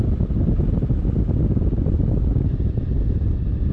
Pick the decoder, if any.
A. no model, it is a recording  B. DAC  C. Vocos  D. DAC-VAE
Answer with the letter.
A